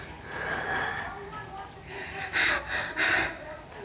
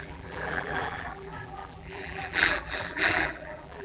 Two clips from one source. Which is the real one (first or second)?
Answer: first